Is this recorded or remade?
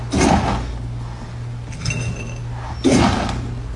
recorded